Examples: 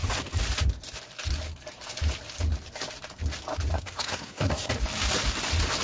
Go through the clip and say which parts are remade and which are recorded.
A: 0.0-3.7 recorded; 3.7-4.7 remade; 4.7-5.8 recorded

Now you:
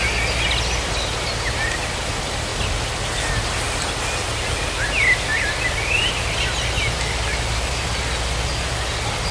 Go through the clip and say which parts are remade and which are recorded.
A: 0.0-9.3 recorded

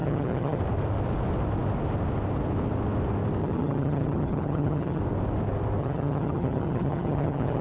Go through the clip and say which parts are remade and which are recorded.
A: 0.0-0.6 remade; 0.6-3.4 recorded; 3.4-5.0 remade; 5.0-5.8 recorded; 5.8-7.6 remade

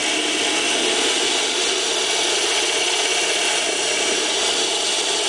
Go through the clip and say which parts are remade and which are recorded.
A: 0.0-5.3 recorded

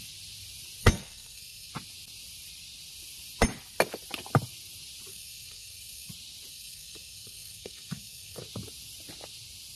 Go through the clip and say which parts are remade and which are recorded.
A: 0.0-0.8 recorded; 0.8-1.7 remade; 1.7-5.1 recorded; 5.1-6.1 remade; 6.1-6.5 recorded; 6.5-8.4 remade; 8.4-9.8 recorded

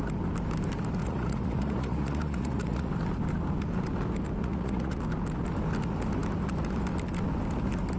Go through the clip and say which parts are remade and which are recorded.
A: 0.0-1.0 recorded; 1.0-2.9 remade; 2.9-4.4 recorded; 4.4-5.0 remade; 5.0-8.0 recorded